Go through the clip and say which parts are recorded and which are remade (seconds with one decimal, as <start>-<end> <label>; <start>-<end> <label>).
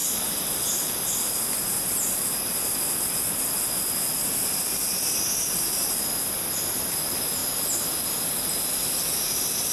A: 0.0-9.7 recorded